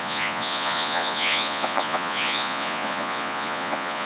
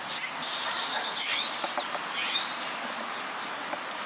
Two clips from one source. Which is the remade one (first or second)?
first